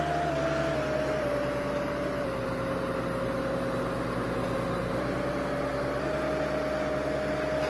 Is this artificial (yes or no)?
no